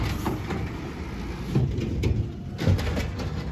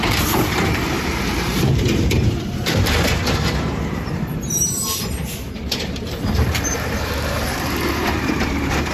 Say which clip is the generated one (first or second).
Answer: second